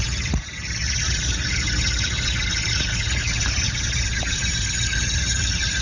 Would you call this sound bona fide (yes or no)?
no